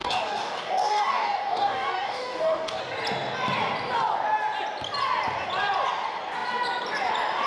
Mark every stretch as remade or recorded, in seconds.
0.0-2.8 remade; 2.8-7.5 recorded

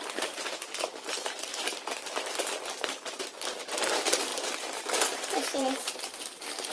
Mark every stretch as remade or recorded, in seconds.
0.0-1.5 remade; 1.5-3.8 recorded; 3.8-6.7 remade

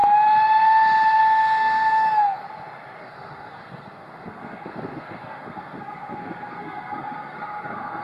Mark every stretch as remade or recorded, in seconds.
0.0-1.2 recorded; 1.2-2.4 remade; 2.4-3.0 recorded; 3.0-8.0 remade

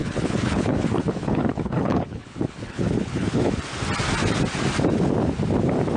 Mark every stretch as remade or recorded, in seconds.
0.0-3.6 remade; 3.6-6.0 recorded